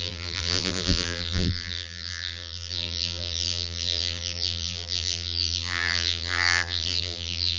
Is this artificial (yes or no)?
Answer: yes